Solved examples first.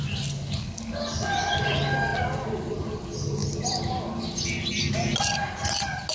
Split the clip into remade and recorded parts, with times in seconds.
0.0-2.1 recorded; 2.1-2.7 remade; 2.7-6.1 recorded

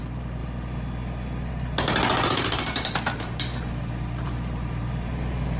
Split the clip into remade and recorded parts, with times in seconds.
0.0-2.1 recorded; 2.1-5.6 remade

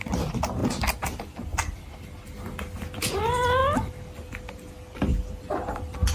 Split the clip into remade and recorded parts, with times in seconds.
0.0-6.1 recorded

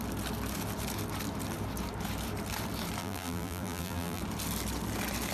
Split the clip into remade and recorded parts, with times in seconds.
0.0-3.0 recorded; 3.0-4.2 remade; 4.2-5.3 recorded

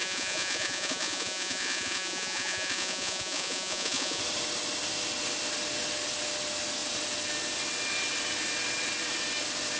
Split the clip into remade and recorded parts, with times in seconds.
0.0-4.2 remade; 4.2-9.8 recorded

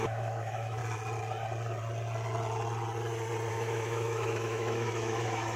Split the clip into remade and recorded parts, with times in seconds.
0.0-0.8 remade; 0.8-3.5 recorded; 3.5-5.6 remade

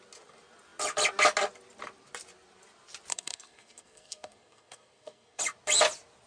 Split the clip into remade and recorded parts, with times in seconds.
0.0-3.1 recorded; 3.1-5.4 remade; 5.4-6.3 recorded